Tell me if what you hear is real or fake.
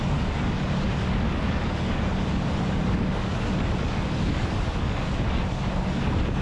fake